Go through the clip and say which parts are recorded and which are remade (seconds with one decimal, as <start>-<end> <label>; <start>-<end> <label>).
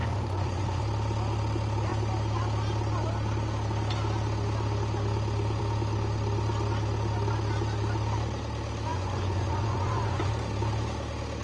0.0-0.8 remade; 0.8-8.9 recorded; 8.9-10.3 remade; 10.3-11.4 recorded